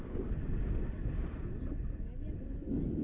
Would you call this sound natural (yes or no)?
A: yes